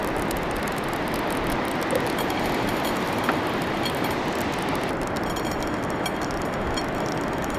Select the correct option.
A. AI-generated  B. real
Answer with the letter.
B